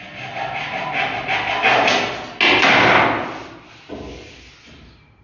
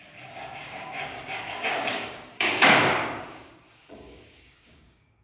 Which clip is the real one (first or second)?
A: first